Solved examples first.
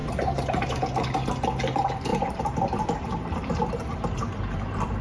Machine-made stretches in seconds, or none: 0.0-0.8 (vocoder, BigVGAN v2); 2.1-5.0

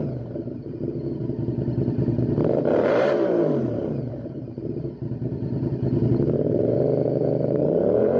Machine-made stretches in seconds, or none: 0.0-1.2 (vocoder, BigVGAN v2); 2.3-8.2

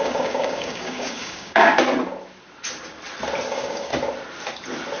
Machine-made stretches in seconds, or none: 0.0-1.7 (codec, DAC); 3.5-3.9

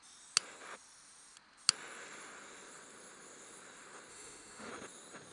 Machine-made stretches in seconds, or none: 4.1-4.7 (autoencoder, DAC-VAE)

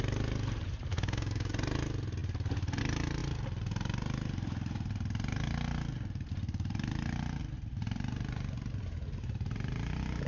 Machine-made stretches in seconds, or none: 0.9-1.5 (codec, DAC)

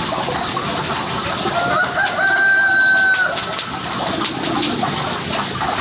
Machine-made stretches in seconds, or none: none

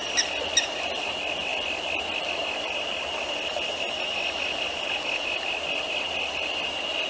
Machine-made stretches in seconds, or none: none

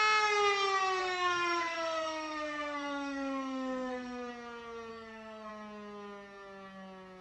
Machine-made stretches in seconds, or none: 1.0-4.3 (codec, SNAC); 4.9-5.5